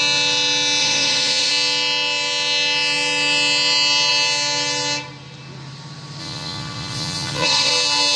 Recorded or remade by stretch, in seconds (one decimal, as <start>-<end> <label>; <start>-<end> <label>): 0.0-0.8 recorded; 0.8-1.5 remade; 1.5-6.2 recorded; 6.2-7.7 remade; 7.7-8.2 recorded